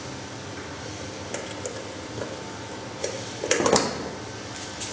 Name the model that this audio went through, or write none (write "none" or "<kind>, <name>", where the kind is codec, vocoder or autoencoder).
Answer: none